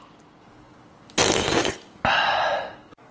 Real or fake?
real